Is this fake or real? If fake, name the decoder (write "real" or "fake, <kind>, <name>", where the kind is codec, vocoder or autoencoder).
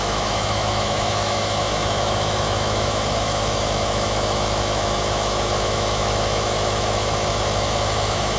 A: fake, autoencoder, DAC-VAE